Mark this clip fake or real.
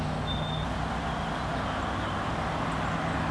real